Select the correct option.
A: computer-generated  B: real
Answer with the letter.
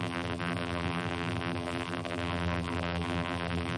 A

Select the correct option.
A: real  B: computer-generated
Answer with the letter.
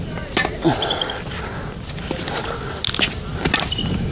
A